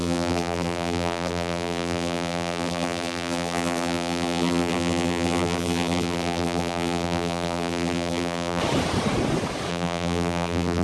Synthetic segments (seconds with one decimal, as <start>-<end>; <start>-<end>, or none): 0.0-8.6; 9.7-10.8